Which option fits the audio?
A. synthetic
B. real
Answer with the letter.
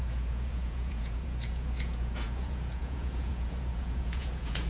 A